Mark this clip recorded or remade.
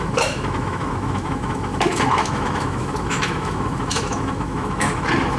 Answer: remade